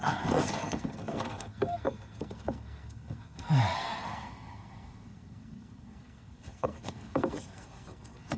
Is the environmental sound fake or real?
fake